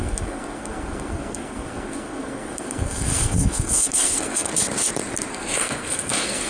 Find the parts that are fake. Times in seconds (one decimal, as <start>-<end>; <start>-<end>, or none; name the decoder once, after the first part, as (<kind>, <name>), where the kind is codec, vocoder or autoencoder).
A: 0.0-4.5 (codec, SNAC); 5.3-6.5